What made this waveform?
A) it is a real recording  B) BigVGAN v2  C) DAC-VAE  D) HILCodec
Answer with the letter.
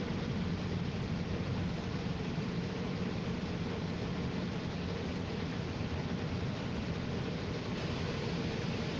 B